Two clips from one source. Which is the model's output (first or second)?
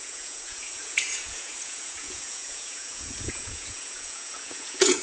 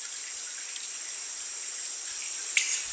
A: first